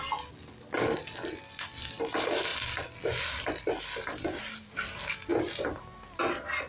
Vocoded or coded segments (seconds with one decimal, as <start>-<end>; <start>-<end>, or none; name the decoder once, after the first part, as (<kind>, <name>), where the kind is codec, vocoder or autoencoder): none